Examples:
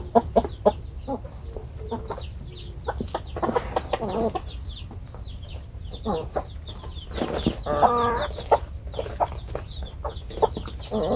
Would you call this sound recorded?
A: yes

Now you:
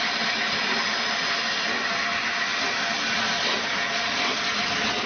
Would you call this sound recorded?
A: yes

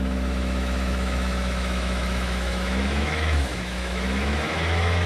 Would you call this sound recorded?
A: no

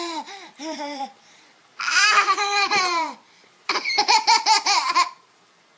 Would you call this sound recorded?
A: no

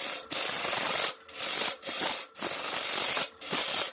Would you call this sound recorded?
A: yes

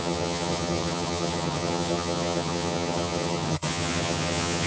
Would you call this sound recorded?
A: no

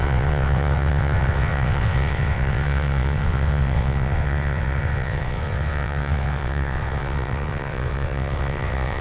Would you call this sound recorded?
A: no